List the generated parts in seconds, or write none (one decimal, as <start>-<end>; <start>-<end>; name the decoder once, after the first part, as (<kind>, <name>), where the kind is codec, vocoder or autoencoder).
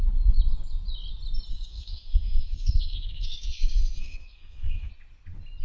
1.5-4.9 (codec, SNAC)